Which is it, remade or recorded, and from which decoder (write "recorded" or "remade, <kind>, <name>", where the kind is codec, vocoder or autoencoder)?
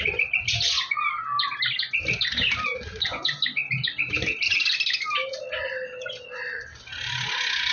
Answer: recorded